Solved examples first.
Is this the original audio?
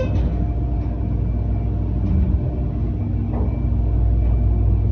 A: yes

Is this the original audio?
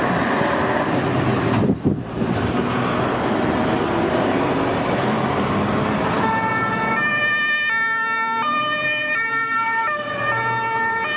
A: yes